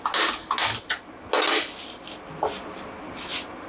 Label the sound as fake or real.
real